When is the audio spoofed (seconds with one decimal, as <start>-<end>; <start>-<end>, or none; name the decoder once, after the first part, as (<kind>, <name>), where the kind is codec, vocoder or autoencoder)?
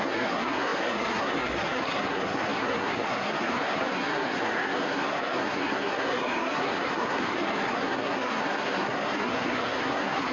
0.0-10.3 (codec, SNAC)